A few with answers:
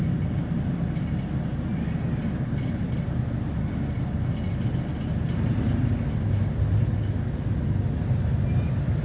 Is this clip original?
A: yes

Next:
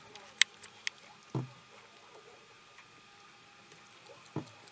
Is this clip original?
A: yes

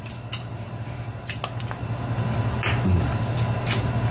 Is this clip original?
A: yes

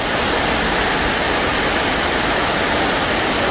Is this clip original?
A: yes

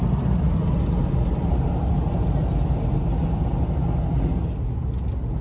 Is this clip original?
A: yes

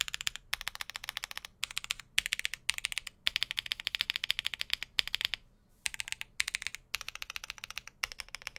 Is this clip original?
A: yes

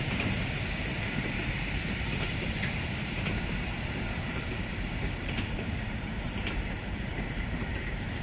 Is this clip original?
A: no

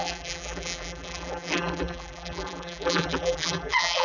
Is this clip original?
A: no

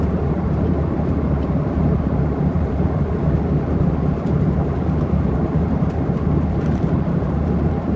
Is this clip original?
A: yes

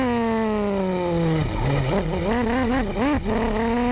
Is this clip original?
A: yes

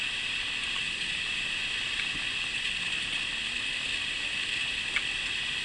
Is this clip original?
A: yes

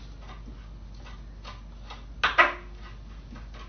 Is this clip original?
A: yes